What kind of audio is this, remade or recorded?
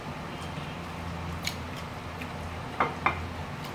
remade